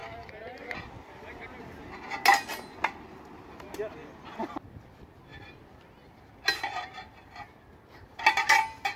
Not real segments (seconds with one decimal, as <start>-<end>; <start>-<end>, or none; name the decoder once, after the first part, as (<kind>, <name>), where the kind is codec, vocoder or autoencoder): none